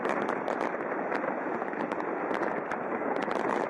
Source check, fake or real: real